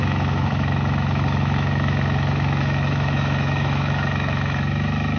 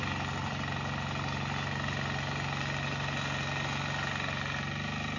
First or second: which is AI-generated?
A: first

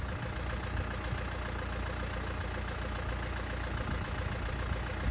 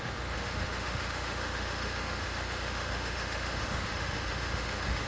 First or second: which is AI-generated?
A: second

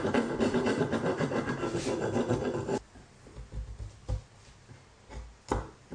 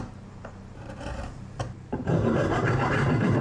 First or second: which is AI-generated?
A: second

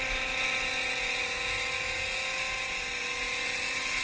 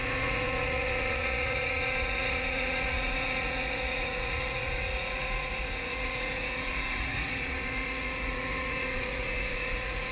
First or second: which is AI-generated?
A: second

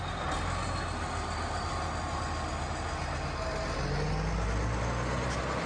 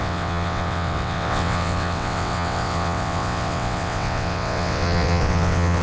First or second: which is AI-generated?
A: second